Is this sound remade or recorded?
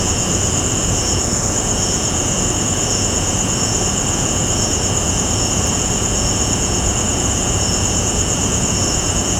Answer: remade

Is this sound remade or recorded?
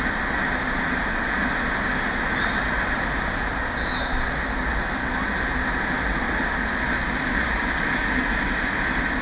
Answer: recorded